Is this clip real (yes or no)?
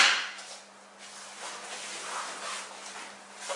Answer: yes